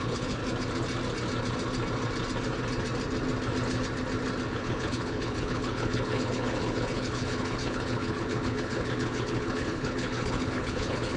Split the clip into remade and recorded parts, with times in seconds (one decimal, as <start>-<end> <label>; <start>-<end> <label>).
0.0-0.4 remade; 0.4-4.5 recorded; 4.5-11.2 remade